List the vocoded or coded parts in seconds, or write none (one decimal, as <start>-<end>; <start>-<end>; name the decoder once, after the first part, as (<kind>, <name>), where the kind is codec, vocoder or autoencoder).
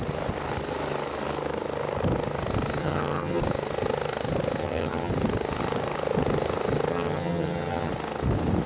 2.8-3.4 (vocoder, HiFi-GAN); 4.6-5.1; 6.9-7.9